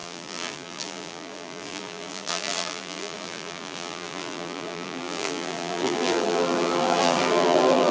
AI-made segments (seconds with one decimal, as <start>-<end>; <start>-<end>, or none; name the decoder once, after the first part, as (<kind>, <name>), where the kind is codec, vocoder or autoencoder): 0.0-7.9 (vocoder, BigVGAN v2)